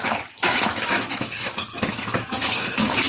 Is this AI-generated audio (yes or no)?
yes